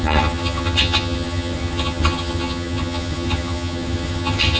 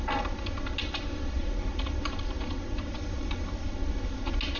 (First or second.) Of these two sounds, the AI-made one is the first